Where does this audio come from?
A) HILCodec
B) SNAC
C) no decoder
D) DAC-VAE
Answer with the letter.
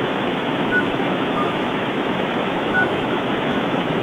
D